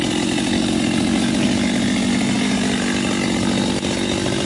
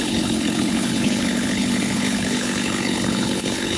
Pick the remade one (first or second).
second